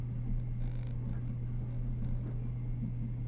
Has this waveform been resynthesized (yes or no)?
no